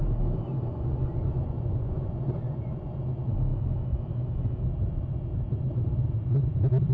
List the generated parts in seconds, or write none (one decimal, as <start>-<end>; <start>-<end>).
0.7-3.0